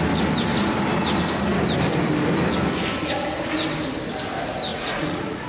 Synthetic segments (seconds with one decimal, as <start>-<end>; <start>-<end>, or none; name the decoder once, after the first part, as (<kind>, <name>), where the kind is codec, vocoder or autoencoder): 4.7-5.5 (vocoder, Vocos)